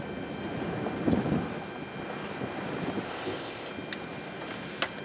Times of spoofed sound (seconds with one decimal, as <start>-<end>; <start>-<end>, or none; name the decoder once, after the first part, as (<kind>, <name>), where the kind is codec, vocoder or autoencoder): 3.1-3.7 (codec, ZipCodec)